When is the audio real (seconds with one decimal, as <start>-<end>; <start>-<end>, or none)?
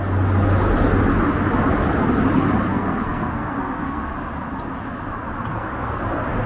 0.0-2.7; 4.0-5.5; 6.0-6.5